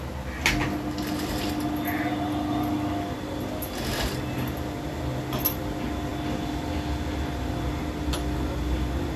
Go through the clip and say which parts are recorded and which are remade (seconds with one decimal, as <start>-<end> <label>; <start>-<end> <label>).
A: 0.0-9.2 recorded